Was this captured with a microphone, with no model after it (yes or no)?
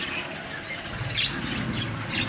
yes